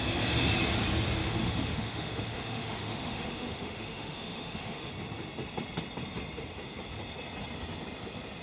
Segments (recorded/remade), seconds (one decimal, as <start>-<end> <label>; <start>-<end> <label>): 0.0-1.2 recorded; 1.2-4.9 remade; 4.9-8.4 recorded